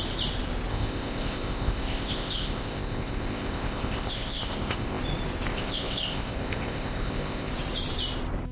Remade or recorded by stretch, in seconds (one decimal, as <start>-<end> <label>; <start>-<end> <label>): 0.0-0.7 recorded; 0.7-5.0 remade; 5.0-5.5 recorded; 5.5-7.5 remade; 7.5-8.5 recorded